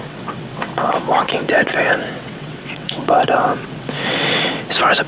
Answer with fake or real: fake